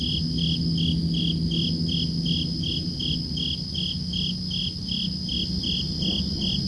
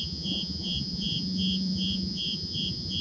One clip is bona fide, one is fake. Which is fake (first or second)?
second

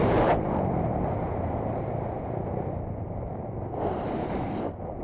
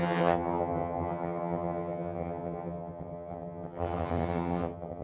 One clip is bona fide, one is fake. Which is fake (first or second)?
second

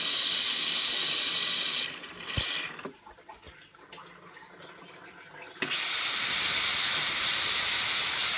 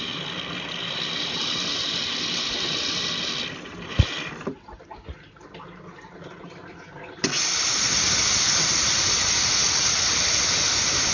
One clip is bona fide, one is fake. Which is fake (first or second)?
second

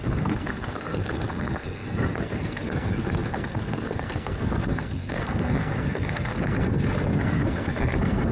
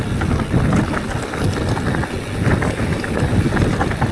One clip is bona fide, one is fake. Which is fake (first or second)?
first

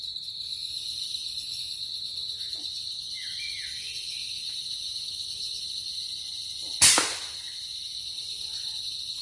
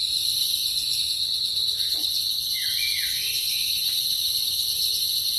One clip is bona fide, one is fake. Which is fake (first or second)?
second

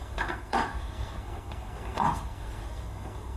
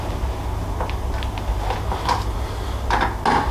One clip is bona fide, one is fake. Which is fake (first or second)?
first